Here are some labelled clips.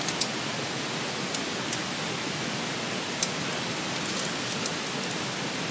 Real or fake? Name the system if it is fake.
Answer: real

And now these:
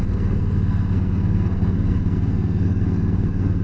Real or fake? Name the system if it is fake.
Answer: fake, codec, SNAC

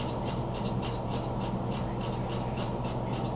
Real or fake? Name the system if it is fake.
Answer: real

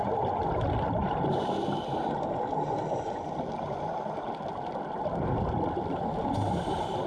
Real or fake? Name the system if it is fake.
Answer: real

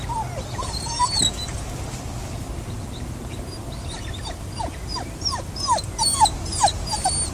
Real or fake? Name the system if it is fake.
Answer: real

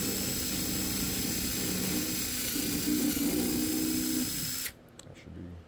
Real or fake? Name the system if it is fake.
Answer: real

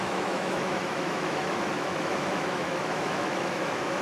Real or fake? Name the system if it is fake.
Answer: fake, autoencoder, DAC-VAE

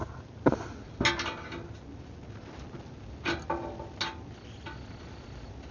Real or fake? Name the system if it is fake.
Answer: real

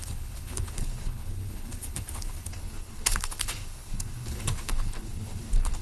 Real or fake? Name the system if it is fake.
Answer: fake, codec, HILCodec